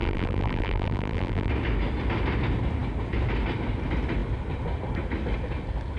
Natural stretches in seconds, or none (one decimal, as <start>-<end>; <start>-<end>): 1.5-6.0